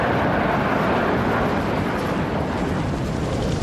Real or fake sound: real